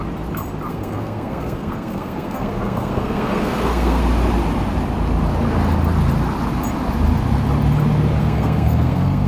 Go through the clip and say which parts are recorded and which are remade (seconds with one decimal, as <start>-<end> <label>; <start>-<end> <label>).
0.0-0.7 recorded; 0.7-4.0 remade; 4.0-8.2 recorded; 8.2-9.3 remade

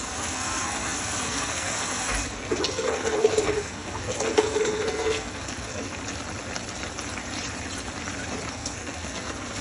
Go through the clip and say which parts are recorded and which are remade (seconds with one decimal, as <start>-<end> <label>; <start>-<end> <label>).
0.0-6.0 remade; 6.0-8.5 recorded; 8.5-9.6 remade

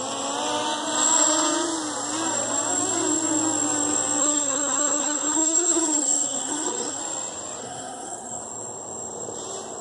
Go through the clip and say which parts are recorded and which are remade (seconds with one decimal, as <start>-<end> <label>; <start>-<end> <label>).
0.0-4.2 recorded; 4.2-7.0 remade; 7.0-7.6 recorded; 7.6-8.4 remade; 8.4-9.8 recorded

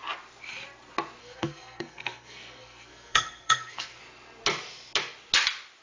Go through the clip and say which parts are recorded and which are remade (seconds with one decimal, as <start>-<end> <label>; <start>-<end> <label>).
0.0-1.2 recorded; 1.2-4.0 remade; 4.0-5.8 recorded

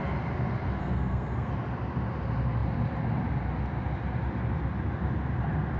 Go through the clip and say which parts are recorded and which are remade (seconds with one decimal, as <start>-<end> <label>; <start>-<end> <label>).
0.0-0.8 recorded; 0.8-1.5 remade; 1.5-5.8 recorded

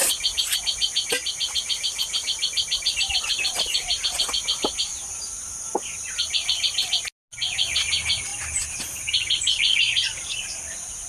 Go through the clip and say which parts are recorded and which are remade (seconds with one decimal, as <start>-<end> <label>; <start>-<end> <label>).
0.0-11.1 recorded

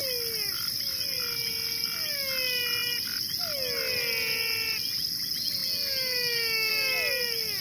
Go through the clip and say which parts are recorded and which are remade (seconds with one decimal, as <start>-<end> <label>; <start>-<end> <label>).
0.0-7.6 recorded